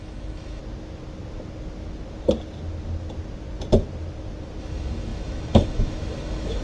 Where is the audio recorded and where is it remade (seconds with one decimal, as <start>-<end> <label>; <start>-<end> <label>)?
0.0-0.6 remade; 0.6-4.6 recorded; 4.6-6.6 remade